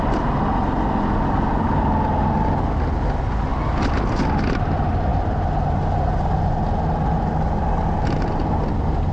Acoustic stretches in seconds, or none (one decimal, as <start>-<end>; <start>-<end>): 0.0-9.1